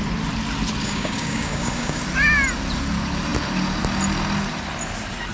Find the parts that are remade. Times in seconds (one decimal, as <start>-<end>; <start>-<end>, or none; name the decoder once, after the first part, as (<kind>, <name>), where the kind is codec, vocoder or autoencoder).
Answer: 0.8-2.0 (codec, DAC)